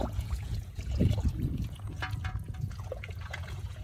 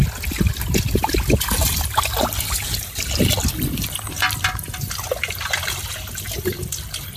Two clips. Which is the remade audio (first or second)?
first